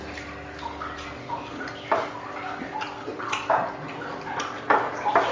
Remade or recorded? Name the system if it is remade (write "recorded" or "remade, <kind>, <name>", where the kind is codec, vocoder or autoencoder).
recorded